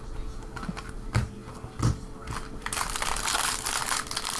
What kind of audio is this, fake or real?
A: real